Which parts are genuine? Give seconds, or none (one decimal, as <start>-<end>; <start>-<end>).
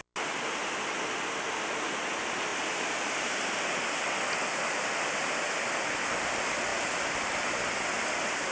0.0-2.5; 3.8-8.5